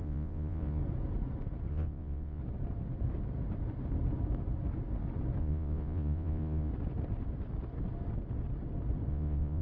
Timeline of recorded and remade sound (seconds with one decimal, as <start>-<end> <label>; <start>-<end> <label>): 0.0-0.8 remade; 0.8-1.7 recorded; 1.7-2.4 remade; 2.4-5.4 recorded; 5.4-6.7 remade; 6.7-9.1 recorded; 9.1-9.6 remade